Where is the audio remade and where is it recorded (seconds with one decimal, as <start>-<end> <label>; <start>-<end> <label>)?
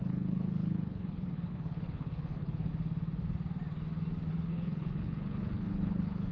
0.0-2.7 remade; 2.7-4.3 recorded; 4.3-6.3 remade